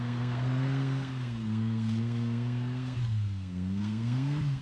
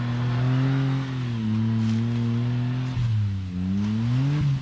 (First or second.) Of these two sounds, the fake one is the first